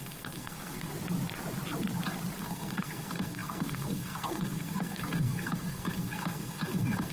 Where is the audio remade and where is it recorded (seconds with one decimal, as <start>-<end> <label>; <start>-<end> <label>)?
0.0-0.9 remade; 0.9-2.4 recorded; 2.4-7.1 remade